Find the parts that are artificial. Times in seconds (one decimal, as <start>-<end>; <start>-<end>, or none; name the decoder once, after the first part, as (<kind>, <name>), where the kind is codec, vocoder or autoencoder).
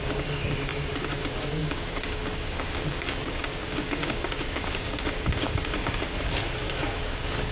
0.0-7.5 (codec, DAC)